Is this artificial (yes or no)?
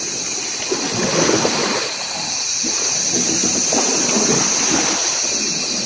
no